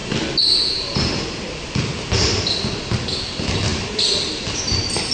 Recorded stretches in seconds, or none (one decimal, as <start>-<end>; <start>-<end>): 0.0-5.1